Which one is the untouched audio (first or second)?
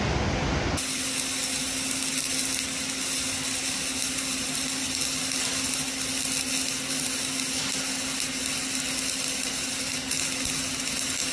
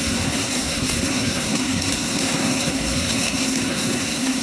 first